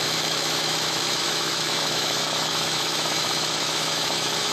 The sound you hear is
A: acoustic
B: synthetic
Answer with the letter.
B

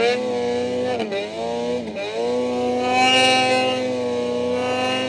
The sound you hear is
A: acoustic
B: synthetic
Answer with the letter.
A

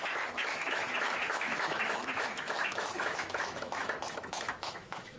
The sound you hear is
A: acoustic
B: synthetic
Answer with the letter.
B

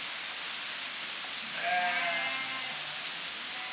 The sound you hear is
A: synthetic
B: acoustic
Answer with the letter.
B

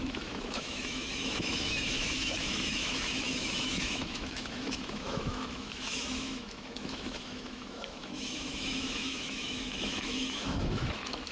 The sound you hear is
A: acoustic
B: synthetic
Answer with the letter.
B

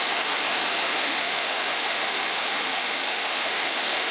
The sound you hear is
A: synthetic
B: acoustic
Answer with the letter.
A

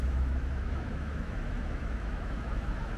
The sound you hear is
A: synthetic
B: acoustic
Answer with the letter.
A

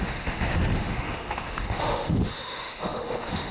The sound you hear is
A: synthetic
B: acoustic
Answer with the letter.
A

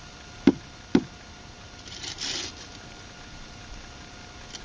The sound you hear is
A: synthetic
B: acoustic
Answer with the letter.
B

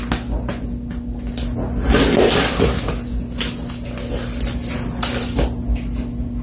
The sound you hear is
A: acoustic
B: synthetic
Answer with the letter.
A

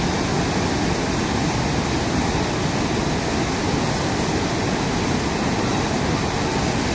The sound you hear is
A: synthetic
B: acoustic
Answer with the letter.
B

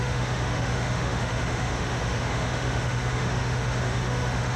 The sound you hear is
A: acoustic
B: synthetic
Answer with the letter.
B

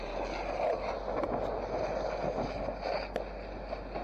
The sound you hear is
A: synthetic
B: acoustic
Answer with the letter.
B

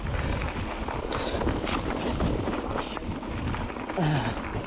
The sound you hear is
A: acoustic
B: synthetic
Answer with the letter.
A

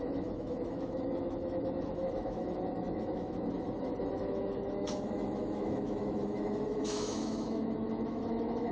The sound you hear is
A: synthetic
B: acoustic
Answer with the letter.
A